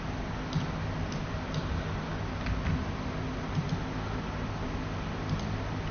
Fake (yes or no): no